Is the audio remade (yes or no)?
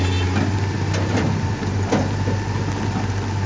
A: no